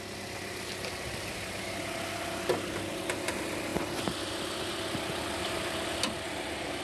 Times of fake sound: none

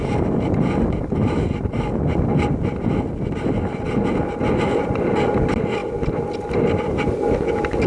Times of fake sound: none

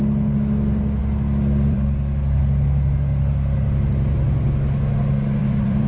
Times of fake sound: 1.0-2.4 (vocoder, BigVGAN v2); 5.4-5.9

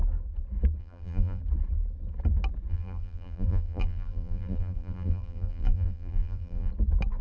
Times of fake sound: 0.8-1.4 (vocoder, BigVGAN v2); 2.7-6.7

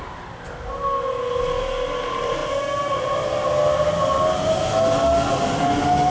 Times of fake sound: none

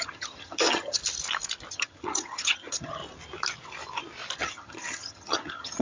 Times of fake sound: 0.0-1.0 (vocoder, HiFi-GAN); 1.7-3.0; 4.4-5.8